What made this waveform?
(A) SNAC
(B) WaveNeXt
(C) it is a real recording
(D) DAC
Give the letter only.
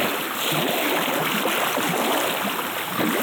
C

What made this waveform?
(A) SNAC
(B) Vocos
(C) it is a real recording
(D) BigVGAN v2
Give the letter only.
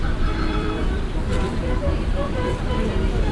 D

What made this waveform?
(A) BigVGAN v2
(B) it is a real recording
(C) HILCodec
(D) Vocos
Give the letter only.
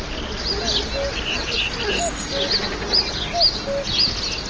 B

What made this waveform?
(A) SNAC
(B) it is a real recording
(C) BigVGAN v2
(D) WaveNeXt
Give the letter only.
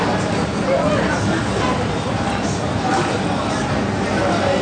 B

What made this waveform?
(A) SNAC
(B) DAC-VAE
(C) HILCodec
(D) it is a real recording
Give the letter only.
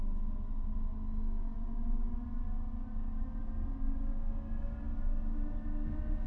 D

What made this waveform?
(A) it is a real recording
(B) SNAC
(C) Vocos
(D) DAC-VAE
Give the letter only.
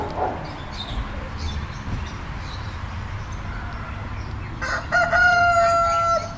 A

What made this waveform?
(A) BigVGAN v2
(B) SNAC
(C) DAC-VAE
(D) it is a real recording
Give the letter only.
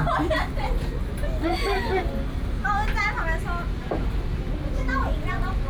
D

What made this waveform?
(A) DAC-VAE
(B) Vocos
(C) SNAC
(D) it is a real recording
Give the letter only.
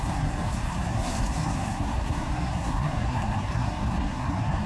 C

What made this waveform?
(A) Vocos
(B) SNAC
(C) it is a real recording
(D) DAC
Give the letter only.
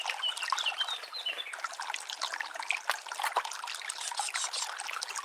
C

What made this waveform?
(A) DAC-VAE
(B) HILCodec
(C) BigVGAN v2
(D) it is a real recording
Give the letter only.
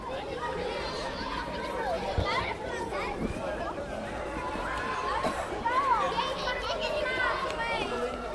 C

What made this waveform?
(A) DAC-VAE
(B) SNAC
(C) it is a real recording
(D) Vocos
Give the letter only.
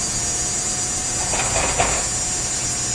C